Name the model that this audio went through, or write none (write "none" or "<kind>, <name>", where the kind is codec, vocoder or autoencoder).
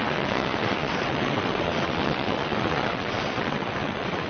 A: vocoder, WaveNeXt